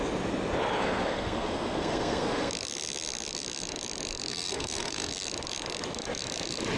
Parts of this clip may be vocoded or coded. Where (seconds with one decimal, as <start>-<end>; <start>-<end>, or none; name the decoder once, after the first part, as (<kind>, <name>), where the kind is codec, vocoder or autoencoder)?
0.8-2.5 (codec, SNAC); 4.3-5.1